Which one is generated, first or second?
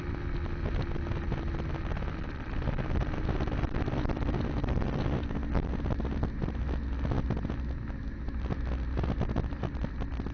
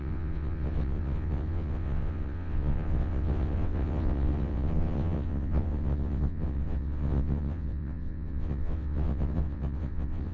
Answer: second